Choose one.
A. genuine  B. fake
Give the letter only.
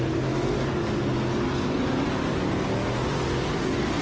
A